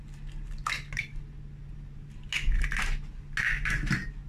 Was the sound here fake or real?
real